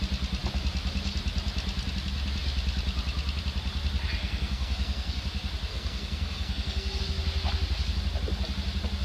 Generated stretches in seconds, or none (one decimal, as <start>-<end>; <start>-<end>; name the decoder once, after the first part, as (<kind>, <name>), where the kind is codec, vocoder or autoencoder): 4.2-5.2 (codec, SNAC); 5.7-7.0